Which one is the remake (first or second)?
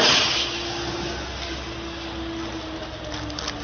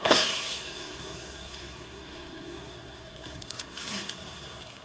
second